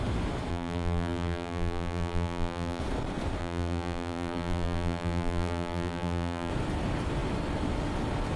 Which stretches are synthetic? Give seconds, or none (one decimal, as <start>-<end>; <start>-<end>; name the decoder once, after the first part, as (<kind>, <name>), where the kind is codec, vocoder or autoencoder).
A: 0.5-2.8 (vocoder, BigVGAN v2); 3.4-6.5

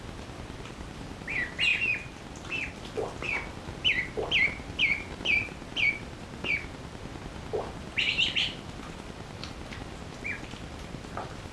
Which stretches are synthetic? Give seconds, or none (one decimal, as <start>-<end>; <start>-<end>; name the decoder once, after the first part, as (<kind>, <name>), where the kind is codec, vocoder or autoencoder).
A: 0.0-11.5 (vocoder, BigVGAN v2)

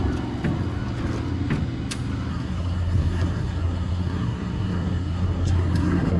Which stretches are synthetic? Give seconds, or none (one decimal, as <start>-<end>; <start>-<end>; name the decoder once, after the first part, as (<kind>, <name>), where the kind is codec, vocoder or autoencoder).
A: 2.3-6.2 (codec, SNAC)

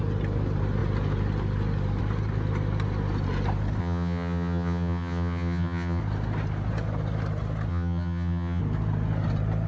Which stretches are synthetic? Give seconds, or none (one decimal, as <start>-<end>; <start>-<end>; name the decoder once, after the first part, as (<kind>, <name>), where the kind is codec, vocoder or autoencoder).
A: 3.8-6.0 (vocoder, HiFi-GAN); 7.7-8.6

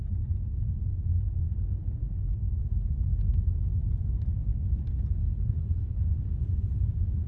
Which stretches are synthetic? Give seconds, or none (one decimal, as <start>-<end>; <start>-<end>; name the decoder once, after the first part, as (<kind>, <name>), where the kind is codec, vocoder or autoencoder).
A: 5.2-6.0 (codec, HILCodec)

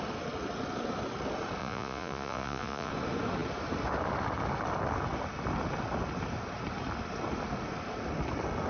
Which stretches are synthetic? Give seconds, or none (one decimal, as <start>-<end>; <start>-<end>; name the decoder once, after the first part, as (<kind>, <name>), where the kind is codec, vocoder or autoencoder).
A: 1.6-2.9 (vocoder, Vocos)

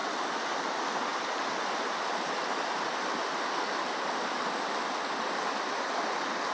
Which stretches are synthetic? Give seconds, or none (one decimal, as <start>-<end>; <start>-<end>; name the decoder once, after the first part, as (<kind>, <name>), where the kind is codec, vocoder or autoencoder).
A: none

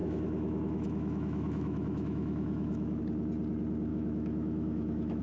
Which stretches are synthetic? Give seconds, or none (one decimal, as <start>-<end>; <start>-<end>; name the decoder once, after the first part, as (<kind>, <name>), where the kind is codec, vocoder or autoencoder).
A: 0.0-3.0 (autoencoder, DAC-VAE); 3.9-5.2